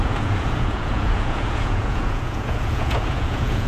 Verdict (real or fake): fake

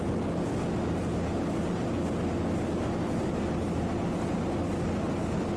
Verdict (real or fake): real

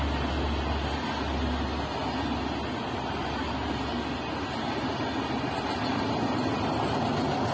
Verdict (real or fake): real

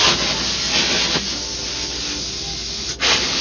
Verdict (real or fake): real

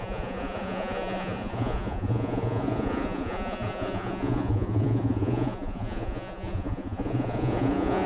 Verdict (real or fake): fake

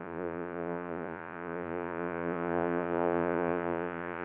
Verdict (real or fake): fake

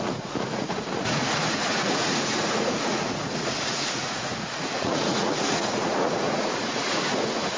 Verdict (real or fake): fake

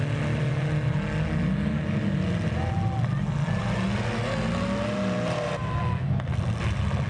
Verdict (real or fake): real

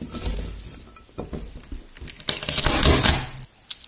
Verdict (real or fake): real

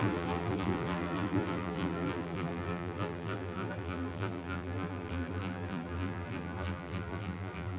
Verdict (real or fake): fake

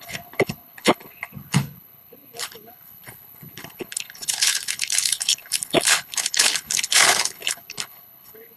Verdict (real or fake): fake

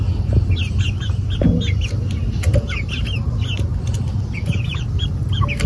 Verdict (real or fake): real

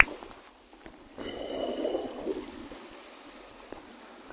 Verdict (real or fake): real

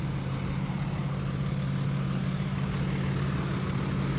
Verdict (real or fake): real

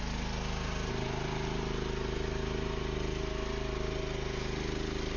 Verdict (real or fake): real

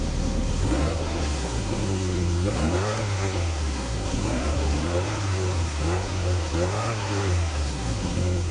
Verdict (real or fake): fake